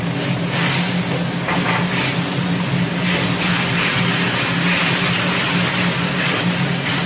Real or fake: real